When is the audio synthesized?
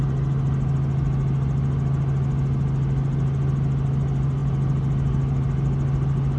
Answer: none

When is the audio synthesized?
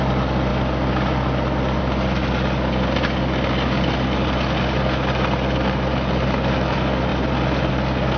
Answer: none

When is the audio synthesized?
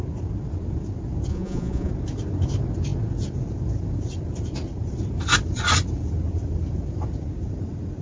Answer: 1.3-1.9 (vocoder, Vocos)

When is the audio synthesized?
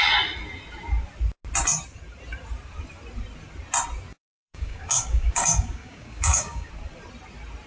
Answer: 4.1-6.7 (codec, DAC)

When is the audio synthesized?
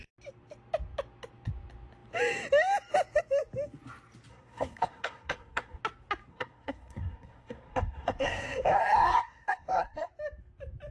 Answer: 4.3-5.8 (codec, SNAC); 6.3-10.1